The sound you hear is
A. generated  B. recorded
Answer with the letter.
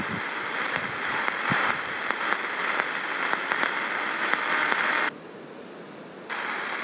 A